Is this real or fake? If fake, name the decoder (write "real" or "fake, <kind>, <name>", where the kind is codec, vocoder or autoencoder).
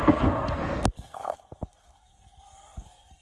fake, codec, SNAC